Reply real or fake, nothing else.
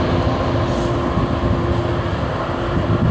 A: real